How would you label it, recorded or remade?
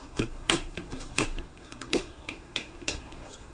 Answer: remade